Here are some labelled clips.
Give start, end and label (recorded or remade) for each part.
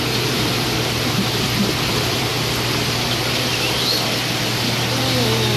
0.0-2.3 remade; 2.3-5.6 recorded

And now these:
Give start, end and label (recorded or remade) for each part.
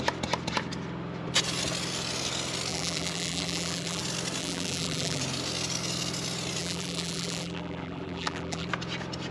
0.0-2.7 recorded; 2.7-4.0 remade; 4.0-4.4 recorded; 4.4-5.2 remade; 5.2-6.6 recorded; 6.6-8.7 remade; 8.7-9.3 recorded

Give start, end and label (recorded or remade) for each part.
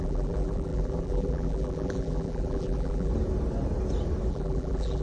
0.0-3.1 remade; 3.1-4.3 recorded; 4.3-5.0 remade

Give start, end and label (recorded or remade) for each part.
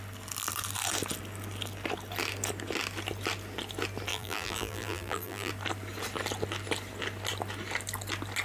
0.0-4.1 recorded; 4.1-5.5 remade; 5.5-8.4 recorded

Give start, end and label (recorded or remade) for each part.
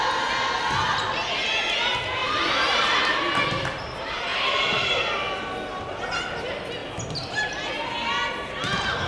0.0-2.2 recorded; 2.2-3.0 remade; 3.0-9.1 recorded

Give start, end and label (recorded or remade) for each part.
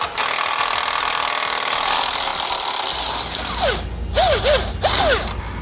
0.0-5.6 recorded